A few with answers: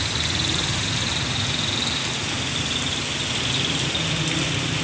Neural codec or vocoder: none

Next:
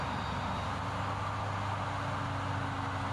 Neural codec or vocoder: none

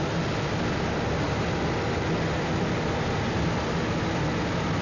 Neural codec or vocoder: none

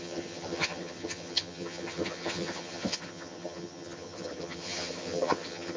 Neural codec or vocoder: vocoder, HiFi-GAN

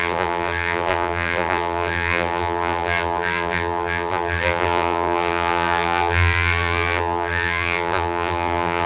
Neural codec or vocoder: vocoder, BigVGAN v2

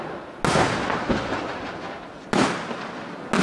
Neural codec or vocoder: none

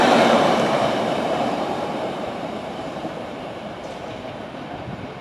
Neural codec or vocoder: vocoder, BigVGAN v2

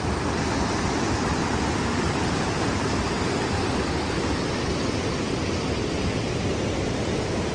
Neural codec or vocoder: none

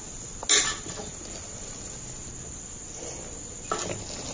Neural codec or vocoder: none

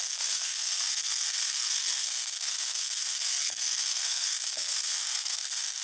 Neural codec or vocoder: codec, SNAC